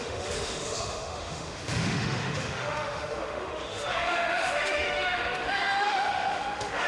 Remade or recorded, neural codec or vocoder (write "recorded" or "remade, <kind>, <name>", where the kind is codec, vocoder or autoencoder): remade, autoencoder, DAC-VAE